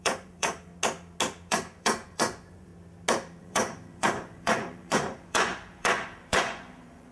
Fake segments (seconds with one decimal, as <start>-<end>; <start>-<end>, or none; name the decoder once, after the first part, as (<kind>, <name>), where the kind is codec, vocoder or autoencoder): 0.0-0.7 (vocoder, Vocos); 1.5-2.7; 3.4-7.1